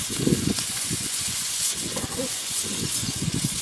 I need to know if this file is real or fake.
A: fake